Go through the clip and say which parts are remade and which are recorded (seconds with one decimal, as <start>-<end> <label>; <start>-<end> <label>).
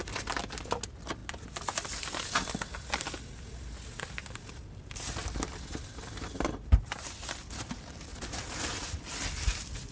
0.0-8.1 recorded; 8.1-9.0 remade; 9.0-9.9 recorded